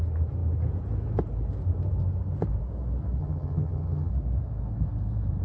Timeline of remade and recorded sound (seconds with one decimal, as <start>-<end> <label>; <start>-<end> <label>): 0.0-3.2 recorded; 3.2-4.1 remade; 4.1-5.4 recorded